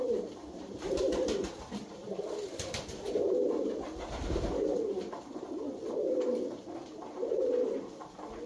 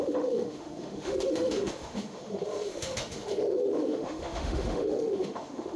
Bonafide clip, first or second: first